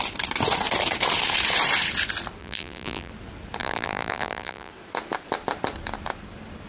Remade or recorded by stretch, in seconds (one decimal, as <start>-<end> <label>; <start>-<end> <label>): 0.0-2.4 recorded; 2.4-3.1 remade; 3.1-3.6 recorded; 3.6-4.7 remade; 4.7-6.7 recorded